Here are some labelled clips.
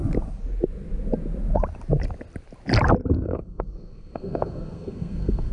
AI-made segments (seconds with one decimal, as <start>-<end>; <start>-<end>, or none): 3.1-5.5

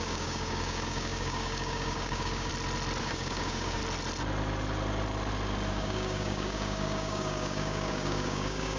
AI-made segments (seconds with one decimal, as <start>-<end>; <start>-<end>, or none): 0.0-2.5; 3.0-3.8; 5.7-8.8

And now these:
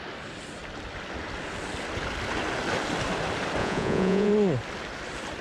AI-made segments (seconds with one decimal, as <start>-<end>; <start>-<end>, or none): 3.6-4.3

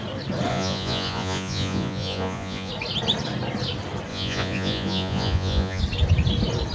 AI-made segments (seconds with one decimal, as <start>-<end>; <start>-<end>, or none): 0.5-2.7; 4.1-5.8

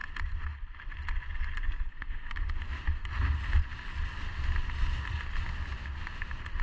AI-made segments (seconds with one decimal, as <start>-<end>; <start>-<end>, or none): 1.9-2.6

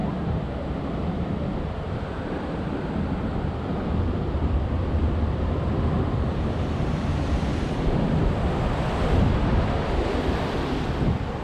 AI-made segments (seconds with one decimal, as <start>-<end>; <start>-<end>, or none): 0.0-11.4

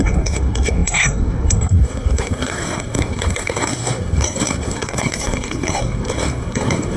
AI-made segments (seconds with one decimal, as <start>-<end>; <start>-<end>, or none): 0.0-7.0